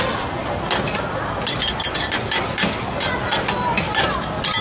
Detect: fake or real real